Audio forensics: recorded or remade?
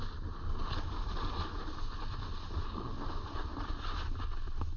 recorded